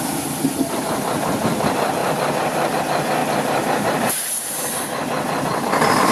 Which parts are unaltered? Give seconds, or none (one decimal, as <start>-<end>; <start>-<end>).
0.0-2.0; 2.8-3.2; 4.3-6.1